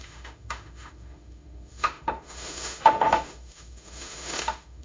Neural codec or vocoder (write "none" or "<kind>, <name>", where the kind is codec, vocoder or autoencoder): autoencoder, DAC-VAE